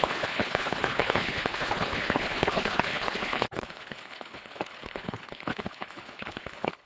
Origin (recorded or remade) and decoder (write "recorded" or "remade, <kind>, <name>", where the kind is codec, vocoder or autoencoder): remade, codec, HILCodec